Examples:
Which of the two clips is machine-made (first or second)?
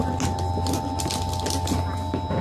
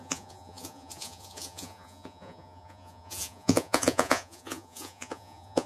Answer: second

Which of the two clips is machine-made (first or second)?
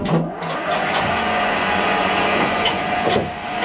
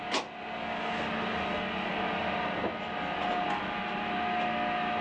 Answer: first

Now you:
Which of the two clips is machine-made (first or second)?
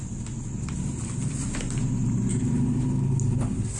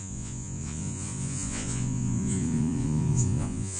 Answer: second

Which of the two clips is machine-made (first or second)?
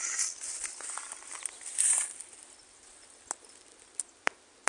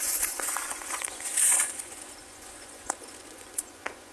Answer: second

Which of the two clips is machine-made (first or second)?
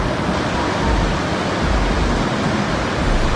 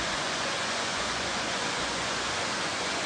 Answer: second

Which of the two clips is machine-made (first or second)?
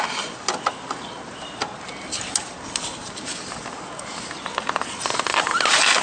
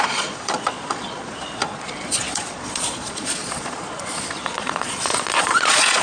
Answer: second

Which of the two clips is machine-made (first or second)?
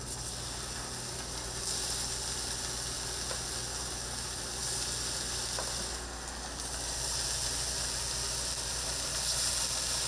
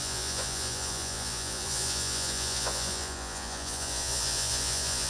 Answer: second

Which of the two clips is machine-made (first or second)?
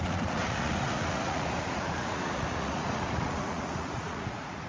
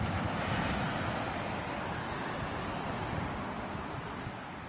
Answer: first